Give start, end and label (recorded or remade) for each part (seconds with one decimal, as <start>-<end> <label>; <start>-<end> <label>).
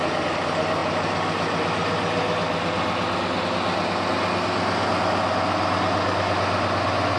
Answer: 0.0-7.2 recorded